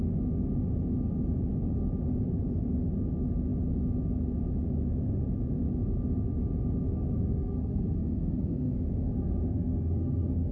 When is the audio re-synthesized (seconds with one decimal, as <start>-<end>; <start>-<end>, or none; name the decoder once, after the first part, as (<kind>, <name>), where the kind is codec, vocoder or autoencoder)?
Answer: 6.9-10.5 (codec, SNAC)